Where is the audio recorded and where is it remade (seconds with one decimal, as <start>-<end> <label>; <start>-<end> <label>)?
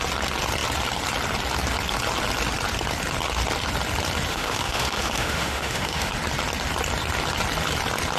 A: 0.0-4.3 recorded; 4.3-6.1 remade; 6.1-8.2 recorded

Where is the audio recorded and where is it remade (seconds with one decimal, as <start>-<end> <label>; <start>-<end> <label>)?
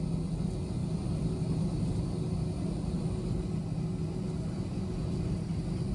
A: 0.0-5.9 recorded